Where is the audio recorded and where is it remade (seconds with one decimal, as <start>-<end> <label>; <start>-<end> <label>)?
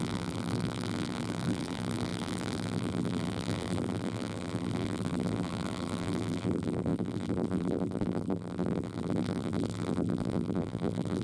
0.0-11.2 remade